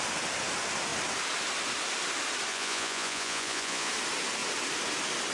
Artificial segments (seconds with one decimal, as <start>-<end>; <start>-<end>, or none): 2.5-3.9